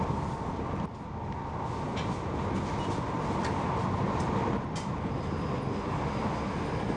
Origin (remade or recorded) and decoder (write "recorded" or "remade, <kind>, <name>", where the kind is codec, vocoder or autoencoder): recorded